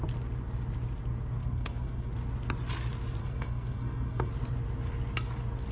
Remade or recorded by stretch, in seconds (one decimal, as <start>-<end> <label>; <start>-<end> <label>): 0.0-1.4 recorded; 1.4-2.1 remade; 2.1-3.2 recorded; 3.2-4.3 remade; 4.3-5.7 recorded